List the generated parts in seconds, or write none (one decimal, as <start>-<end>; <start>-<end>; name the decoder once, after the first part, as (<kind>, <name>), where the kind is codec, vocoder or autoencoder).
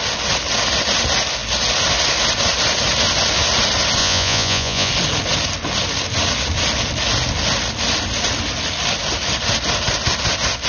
4.0-4.9 (vocoder, Vocos)